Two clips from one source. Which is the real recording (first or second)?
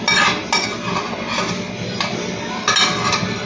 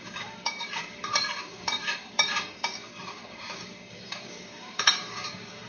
first